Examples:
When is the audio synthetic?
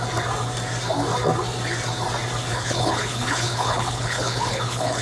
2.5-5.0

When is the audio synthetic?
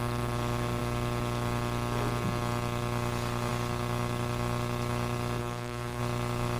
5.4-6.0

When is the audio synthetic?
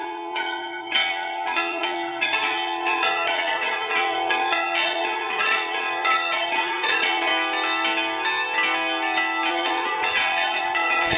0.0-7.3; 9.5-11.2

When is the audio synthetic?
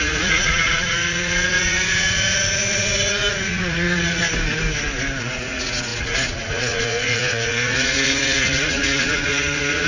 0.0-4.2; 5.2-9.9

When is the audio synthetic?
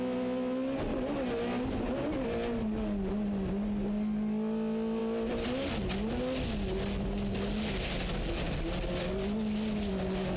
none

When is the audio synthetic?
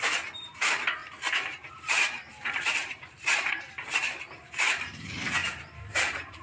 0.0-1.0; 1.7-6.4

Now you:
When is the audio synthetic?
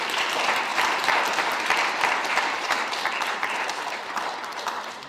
0.0-5.1